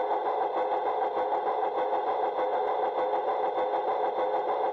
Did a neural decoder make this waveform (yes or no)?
no